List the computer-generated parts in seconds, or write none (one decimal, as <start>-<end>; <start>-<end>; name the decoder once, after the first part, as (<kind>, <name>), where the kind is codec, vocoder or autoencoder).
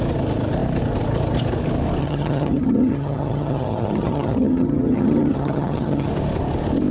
2.0-6.1 (vocoder, HiFi-GAN)